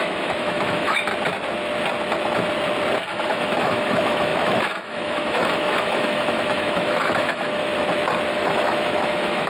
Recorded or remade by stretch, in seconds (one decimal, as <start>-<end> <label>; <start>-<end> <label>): 0.0-1.1 remade; 1.1-3.1 recorded; 3.1-7.7 remade; 7.7-8.3 recorded; 8.3-9.5 remade